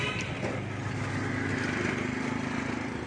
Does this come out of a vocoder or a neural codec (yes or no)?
no